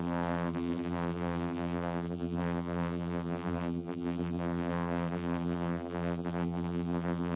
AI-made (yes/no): yes